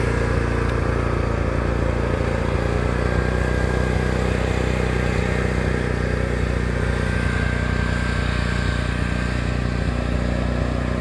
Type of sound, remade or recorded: recorded